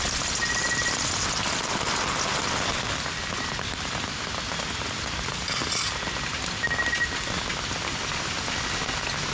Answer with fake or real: real